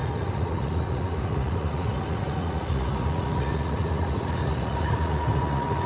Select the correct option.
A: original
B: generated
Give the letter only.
B